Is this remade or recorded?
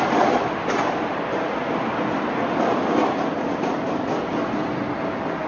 recorded